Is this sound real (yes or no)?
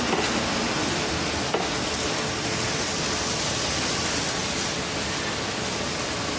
yes